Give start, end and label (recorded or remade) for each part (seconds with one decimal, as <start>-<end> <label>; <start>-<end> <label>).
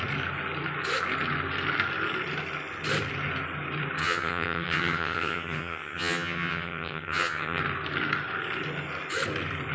0.0-4.0 recorded; 4.0-7.6 remade; 7.6-9.7 recorded